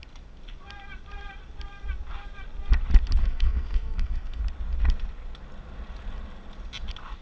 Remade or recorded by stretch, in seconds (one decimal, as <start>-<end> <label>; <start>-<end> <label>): 0.0-3.2 recorded; 3.2-4.4 remade; 4.4-7.2 recorded